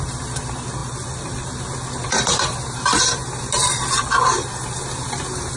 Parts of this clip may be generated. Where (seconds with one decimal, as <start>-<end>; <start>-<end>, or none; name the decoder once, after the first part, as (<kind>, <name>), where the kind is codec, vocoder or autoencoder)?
none